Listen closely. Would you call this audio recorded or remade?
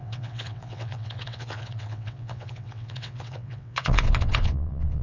remade